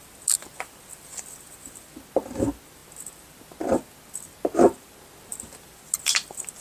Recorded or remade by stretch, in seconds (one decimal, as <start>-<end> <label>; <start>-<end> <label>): 0.0-6.6 recorded